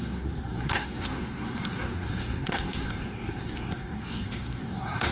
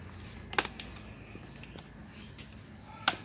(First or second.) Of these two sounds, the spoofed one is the first